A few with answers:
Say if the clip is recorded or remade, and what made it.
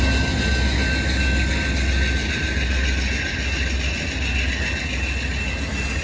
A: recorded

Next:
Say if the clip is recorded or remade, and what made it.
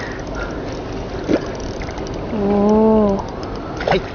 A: recorded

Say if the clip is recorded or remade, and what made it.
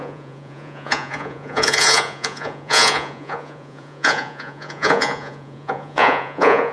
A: remade, vocoder, Vocos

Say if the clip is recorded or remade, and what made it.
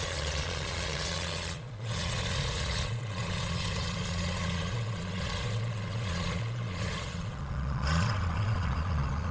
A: remade, vocoder, Vocos